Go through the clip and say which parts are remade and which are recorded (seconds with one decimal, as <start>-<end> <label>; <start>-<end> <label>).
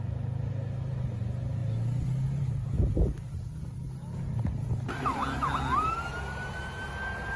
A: 0.0-7.4 recorded